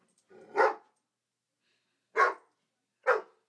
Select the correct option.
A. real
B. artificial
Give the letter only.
A